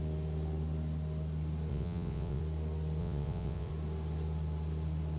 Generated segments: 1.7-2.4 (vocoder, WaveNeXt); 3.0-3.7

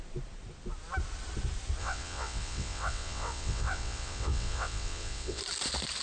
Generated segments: 1.8-5.4 (vocoder, WaveNeXt)

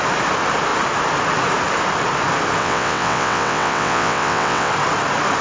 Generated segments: 2.6-4.7 (vocoder, WaveNeXt)

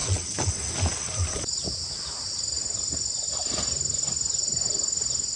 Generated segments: 0.0-0.5 (vocoder, WaveNeXt)

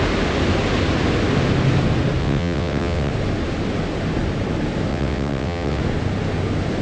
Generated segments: 2.2-3.1 (vocoder, WaveNeXt); 4.9-5.8